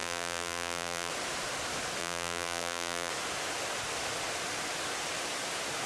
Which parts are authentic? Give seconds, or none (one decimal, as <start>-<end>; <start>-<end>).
1.1-2.0; 3.1-5.9